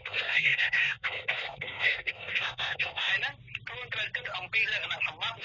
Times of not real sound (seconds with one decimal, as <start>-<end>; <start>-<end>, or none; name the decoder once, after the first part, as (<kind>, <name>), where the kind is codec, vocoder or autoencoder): 0.0-3.1 (codec, SNAC)